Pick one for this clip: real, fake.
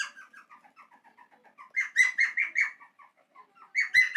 real